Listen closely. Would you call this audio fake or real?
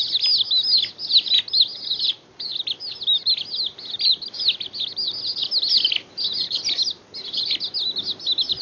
real